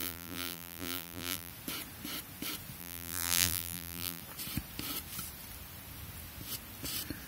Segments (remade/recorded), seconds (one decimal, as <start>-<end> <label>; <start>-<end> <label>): 0.0-1.5 remade; 1.5-2.8 recorded; 2.8-4.2 remade; 4.2-7.3 recorded